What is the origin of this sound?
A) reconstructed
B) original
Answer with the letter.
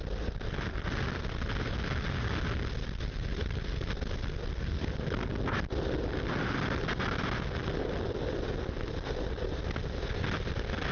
B